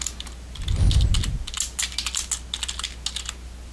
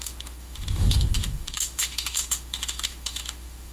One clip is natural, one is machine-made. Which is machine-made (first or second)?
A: second